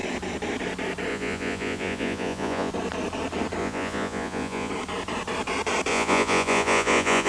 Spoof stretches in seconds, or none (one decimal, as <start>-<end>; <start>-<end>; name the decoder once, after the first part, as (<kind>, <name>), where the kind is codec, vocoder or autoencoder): 1.1-2.7 (vocoder, Vocos); 3.6-4.7; 5.9-7.3

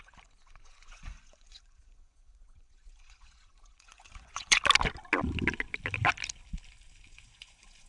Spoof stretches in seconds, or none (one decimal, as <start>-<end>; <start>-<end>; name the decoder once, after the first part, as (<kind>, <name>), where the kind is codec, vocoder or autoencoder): 0.0-4.6 (vocoder, Vocos); 7.1-7.9

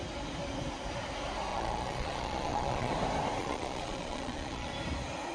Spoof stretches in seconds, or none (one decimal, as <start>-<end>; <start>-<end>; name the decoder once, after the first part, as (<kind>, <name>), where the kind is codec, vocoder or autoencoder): 1.5-2.9 (vocoder, Vocos); 3.4-4.7

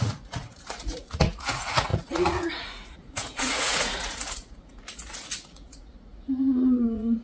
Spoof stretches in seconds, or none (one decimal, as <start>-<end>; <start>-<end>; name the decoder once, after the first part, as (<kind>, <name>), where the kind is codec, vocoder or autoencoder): 0.0-7.2 (vocoder, Vocos)

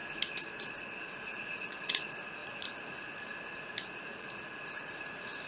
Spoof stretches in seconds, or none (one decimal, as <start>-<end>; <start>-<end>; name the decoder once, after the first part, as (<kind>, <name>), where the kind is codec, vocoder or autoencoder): 1.0-5.5 (vocoder, Vocos)

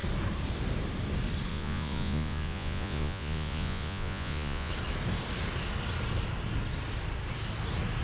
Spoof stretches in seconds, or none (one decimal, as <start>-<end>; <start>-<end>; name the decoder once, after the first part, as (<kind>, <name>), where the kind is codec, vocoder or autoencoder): 1.5-4.7 (vocoder, Vocos)

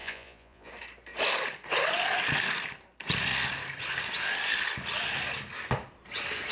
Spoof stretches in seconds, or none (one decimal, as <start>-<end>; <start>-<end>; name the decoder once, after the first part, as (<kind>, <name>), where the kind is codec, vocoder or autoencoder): 0.0-0.7 (vocoder, Vocos)

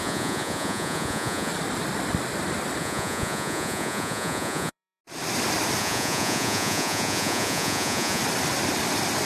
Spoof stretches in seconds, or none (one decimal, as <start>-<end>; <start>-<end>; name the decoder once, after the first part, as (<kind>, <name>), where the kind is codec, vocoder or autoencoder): 0.0-1.5 (vocoder, Vocos); 2.8-5.0; 5.8-8.2